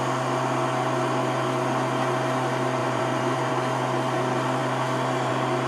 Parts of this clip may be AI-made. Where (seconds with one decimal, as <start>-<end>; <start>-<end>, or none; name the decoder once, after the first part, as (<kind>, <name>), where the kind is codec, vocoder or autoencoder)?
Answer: 2.8-3.5 (vocoder, BigVGAN v2)